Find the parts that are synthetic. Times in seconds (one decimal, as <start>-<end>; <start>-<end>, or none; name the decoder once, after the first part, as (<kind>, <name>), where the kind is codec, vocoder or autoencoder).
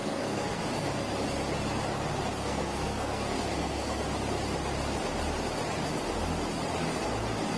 0.0-0.6 (codec, SNAC); 2.4-4.0